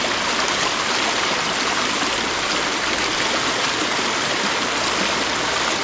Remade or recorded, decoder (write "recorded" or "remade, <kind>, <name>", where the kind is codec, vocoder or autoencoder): recorded